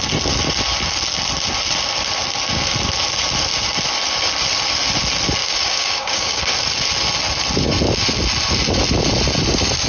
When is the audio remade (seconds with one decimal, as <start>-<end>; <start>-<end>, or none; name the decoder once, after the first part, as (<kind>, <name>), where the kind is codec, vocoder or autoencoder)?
5.4-6.4 (codec, DAC)